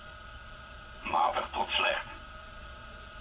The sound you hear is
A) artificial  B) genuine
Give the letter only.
A